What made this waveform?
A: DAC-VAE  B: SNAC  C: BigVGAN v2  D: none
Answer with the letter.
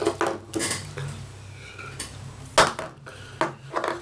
D